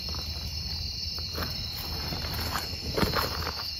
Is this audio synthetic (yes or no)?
no